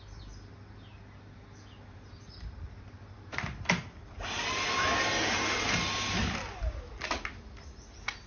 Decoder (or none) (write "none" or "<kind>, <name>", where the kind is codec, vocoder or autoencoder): none